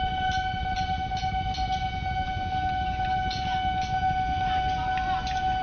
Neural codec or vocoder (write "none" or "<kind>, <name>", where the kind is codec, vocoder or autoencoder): none